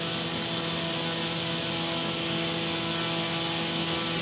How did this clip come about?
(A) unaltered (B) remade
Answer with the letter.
A